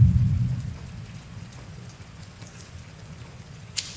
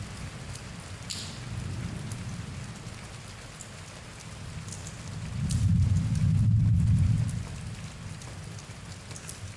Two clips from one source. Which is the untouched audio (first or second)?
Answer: second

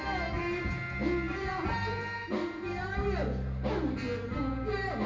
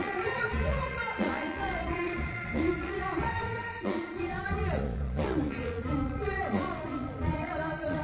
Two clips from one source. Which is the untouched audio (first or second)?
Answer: first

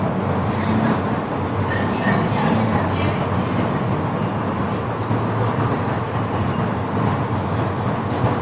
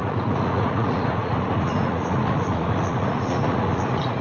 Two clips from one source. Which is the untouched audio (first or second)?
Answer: first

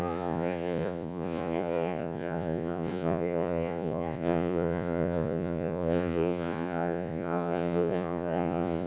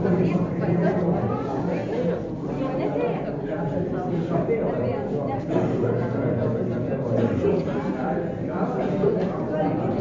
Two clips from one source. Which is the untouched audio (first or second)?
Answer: second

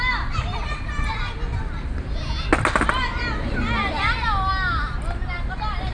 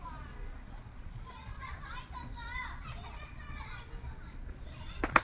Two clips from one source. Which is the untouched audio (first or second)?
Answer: first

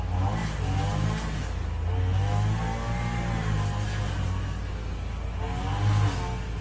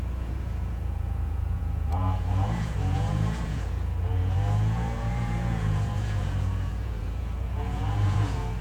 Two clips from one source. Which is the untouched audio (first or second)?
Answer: first